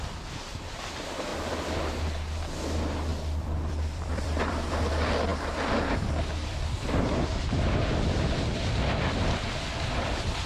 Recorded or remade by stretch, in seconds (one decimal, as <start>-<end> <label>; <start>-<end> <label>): 0.0-1.3 recorded; 1.3-1.9 remade; 1.9-3.1 recorded; 3.1-4.7 remade; 4.7-10.5 recorded